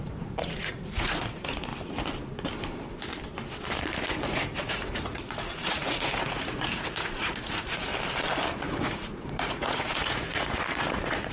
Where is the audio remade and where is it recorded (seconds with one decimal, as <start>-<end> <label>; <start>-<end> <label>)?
0.0-1.7 remade; 1.7-4.1 recorded; 4.1-7.9 remade; 7.9-8.6 recorded; 8.6-11.3 remade